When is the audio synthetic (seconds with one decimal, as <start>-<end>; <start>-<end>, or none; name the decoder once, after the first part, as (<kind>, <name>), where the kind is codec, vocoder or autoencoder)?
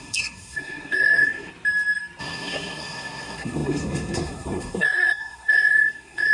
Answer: 0.0-1.5 (codec, SNAC); 2.2-6.3